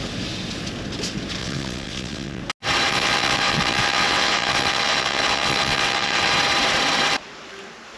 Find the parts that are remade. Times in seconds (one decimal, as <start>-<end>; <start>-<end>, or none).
1.4-2.4; 2.9-6.3